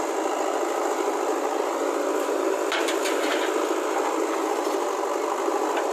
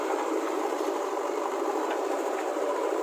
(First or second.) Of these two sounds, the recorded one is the first